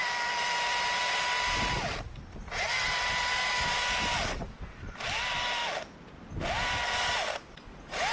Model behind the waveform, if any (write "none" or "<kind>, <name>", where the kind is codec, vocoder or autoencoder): none